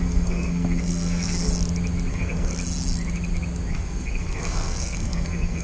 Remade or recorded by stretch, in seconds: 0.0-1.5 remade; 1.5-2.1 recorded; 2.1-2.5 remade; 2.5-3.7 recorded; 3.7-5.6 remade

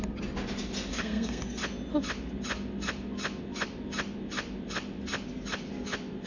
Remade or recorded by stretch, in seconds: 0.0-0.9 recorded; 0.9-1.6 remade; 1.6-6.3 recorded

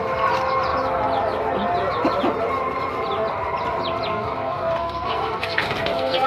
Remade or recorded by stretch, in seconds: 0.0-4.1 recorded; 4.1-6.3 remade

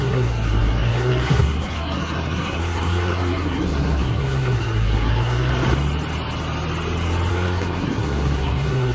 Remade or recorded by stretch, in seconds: 0.0-5.5 remade; 5.5-7.3 recorded; 7.3-8.9 remade

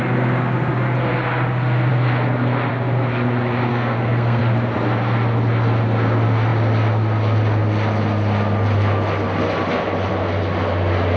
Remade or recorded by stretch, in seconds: 0.0-3.7 recorded; 3.7-4.4 remade; 4.4-11.2 recorded